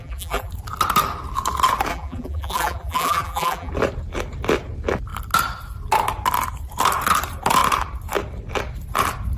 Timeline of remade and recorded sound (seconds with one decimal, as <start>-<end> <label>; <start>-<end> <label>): 0.0-0.5 remade; 0.5-1.9 recorded; 1.9-3.7 remade; 3.7-9.4 recorded